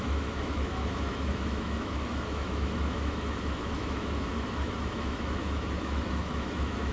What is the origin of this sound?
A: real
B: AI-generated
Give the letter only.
B